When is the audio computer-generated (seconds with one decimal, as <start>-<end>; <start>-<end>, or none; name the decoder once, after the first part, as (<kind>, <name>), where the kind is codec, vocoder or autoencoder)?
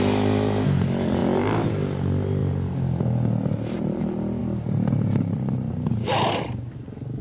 none